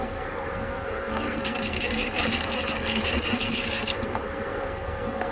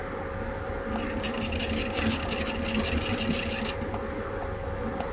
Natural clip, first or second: second